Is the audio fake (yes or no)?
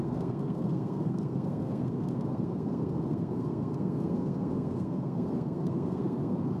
yes